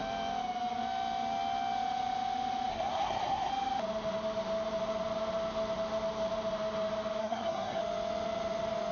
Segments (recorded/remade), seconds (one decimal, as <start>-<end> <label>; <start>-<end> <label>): 0.0-2.7 recorded; 2.7-3.5 remade; 3.5-7.2 recorded; 7.2-7.8 remade; 7.8-8.9 recorded